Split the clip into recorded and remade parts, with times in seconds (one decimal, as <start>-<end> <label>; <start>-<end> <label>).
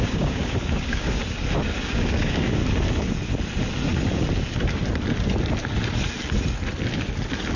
0.0-1.2 remade; 1.2-1.8 recorded; 1.8-2.6 remade; 2.6-7.6 recorded